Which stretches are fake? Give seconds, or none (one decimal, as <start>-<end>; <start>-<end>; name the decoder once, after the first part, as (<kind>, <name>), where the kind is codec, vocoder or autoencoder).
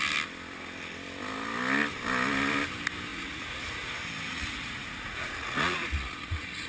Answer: 3.1-3.9 (vocoder, Vocos); 4.3-6.7